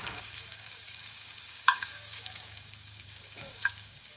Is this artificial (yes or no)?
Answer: yes